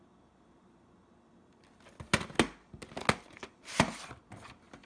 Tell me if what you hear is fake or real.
real